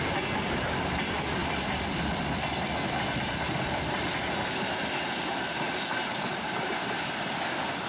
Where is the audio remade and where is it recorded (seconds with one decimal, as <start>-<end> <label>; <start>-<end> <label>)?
0.0-7.9 recorded